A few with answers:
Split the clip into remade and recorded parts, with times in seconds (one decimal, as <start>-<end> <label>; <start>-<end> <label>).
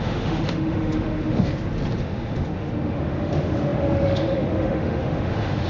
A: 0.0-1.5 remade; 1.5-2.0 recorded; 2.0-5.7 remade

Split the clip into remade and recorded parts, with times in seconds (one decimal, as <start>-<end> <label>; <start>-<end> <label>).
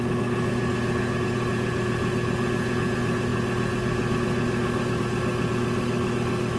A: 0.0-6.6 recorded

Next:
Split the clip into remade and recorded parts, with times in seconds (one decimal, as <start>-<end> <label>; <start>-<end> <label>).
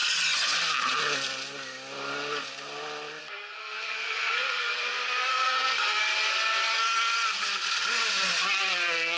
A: 0.0-3.2 recorded; 3.2-4.8 remade; 4.8-5.3 recorded; 5.3-6.0 remade; 6.0-9.2 recorded